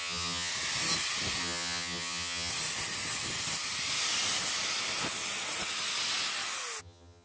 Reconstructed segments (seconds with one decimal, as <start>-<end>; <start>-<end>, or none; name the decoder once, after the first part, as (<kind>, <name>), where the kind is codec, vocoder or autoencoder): 0.0-0.5 (vocoder, HiFi-GAN); 1.4-2.5; 6.8-7.2